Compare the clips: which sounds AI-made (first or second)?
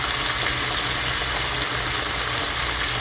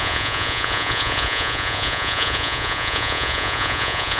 second